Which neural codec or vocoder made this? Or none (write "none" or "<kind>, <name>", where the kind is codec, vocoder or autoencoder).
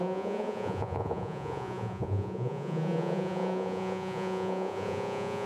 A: vocoder, Vocos